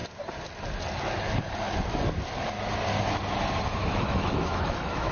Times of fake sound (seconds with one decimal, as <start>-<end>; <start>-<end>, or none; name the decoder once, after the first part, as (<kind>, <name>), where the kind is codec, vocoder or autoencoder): 3.8-5.1 (autoencoder, DAC-VAE)